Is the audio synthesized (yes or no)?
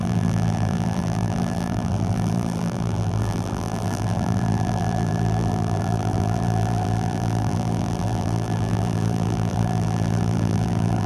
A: yes